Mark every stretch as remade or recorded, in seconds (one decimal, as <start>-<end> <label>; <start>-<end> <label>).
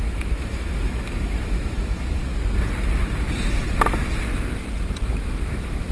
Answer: 0.0-2.2 remade; 2.2-5.5 recorded; 5.5-5.9 remade